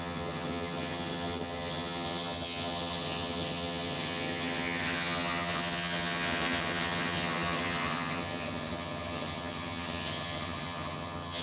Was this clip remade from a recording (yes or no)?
yes